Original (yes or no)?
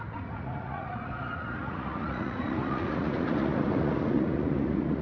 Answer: no